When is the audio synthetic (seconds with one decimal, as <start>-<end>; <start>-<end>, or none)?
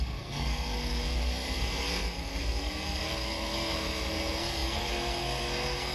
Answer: 0.0-5.9